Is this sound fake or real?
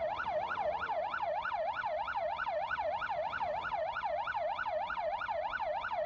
fake